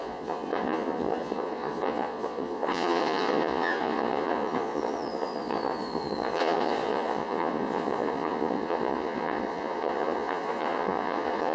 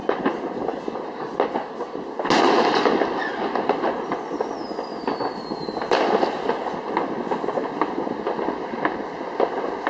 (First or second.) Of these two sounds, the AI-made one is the first